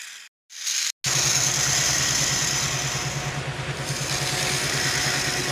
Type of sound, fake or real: real